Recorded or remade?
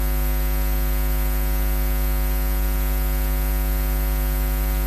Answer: recorded